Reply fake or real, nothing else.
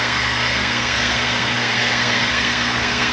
fake